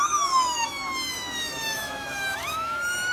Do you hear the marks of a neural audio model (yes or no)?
yes